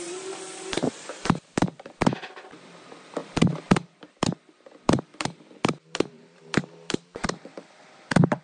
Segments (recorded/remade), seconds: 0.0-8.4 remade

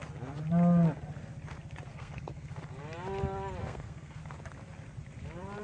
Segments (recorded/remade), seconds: 0.0-1.9 recorded; 1.9-2.6 remade; 2.6-3.6 recorded; 3.6-4.2 remade; 4.2-5.6 recorded

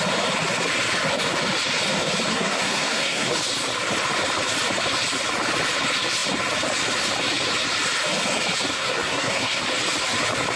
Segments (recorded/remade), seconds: 0.0-2.3 recorded; 2.3-3.3 remade; 3.3-8.7 recorded; 8.7-9.6 remade; 9.6-10.6 recorded

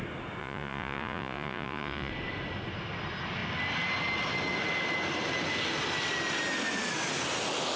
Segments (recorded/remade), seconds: 0.0-0.4 recorded; 0.4-2.1 remade; 2.1-7.8 recorded